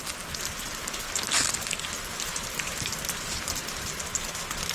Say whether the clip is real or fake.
real